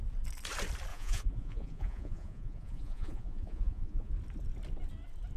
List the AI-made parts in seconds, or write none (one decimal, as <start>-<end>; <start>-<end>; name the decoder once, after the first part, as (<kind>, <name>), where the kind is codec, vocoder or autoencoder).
0.9-4.1 (vocoder, Vocos)